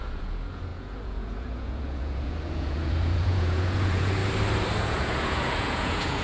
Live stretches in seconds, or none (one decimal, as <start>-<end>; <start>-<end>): 4.2-4.8